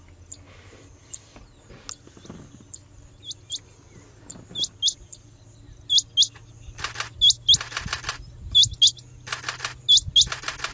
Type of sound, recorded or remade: recorded